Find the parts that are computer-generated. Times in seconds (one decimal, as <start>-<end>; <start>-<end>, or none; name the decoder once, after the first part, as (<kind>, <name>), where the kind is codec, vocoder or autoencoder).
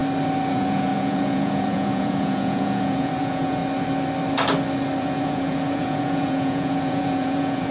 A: 0.5-3.6 (vocoder, Vocos); 5.0-7.7